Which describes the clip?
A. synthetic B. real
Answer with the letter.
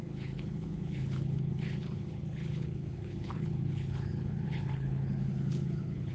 A